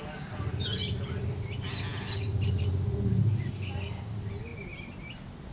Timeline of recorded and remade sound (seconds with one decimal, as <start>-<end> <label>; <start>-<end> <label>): 0.0-4.5 recorded; 4.5-5.5 remade